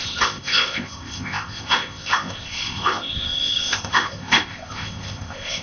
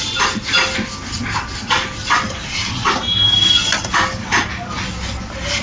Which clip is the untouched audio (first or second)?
second